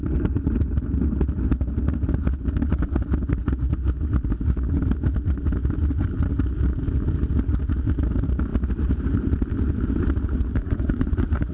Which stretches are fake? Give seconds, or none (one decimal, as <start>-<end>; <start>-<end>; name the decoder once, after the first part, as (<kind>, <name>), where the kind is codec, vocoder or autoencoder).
10.5-11.5 (vocoder, Vocos)